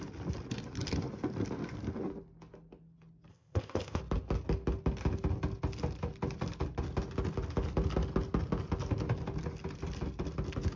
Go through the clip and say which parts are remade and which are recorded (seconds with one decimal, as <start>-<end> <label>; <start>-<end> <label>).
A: 0.0-3.3 recorded; 3.3-4.0 remade; 4.0-10.8 recorded